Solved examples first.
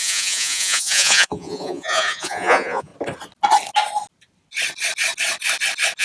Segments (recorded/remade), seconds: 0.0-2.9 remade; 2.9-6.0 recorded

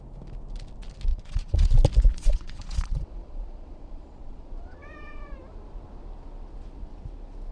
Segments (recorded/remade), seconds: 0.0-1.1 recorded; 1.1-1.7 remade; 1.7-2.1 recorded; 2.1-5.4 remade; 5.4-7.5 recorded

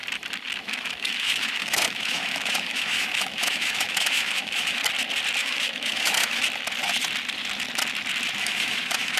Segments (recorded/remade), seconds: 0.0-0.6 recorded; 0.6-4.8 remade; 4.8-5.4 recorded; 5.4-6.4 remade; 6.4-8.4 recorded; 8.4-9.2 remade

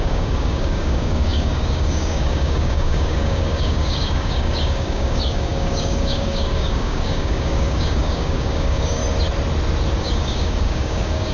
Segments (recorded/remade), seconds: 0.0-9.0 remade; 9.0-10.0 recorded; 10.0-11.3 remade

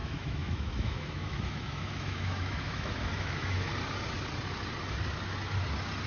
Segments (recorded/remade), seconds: 0.0-3.7 remade; 3.7-6.1 recorded